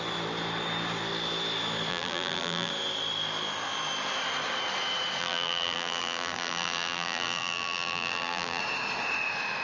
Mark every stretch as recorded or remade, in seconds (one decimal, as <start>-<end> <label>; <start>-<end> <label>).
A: 0.0-1.9 recorded; 1.9-2.7 remade; 2.7-5.2 recorded; 5.2-8.6 remade; 8.6-9.6 recorded